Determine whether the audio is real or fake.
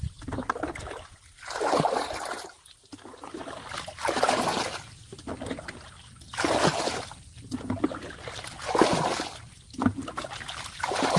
real